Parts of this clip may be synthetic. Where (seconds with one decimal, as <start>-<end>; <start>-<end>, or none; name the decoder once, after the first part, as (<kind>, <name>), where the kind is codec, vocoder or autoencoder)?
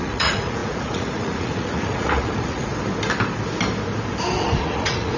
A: 0.0-2.7 (vocoder, Vocos); 4.6-5.2